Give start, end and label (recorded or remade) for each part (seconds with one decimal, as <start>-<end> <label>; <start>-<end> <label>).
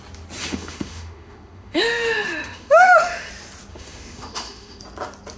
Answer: 0.0-0.4 recorded; 0.4-3.3 remade; 3.3-3.7 recorded; 3.7-4.8 remade; 4.8-5.4 recorded